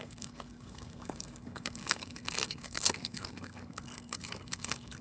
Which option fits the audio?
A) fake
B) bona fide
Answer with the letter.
A